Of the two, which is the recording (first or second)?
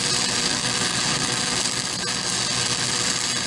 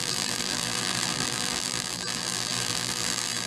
first